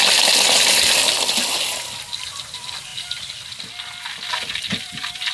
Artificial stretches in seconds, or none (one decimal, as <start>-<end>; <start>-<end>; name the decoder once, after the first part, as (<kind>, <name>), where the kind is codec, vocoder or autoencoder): none